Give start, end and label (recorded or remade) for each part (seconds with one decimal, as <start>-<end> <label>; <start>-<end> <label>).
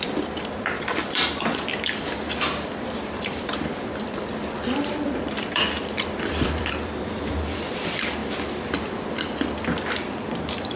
0.0-8.2 remade; 8.2-8.7 recorded; 8.7-10.8 remade